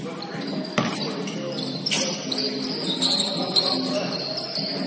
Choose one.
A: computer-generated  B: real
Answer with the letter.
B